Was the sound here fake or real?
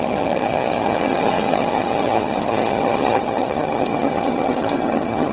fake